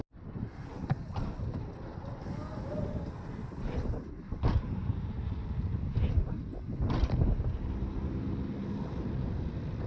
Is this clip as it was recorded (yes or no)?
yes